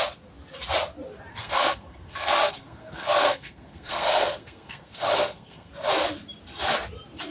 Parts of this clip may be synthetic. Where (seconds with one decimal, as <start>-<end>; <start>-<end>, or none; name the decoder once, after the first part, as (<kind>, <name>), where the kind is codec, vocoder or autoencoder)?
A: 1.3-5.7 (codec, SNAC)